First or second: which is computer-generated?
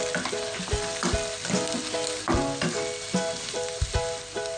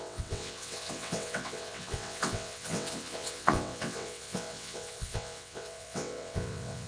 second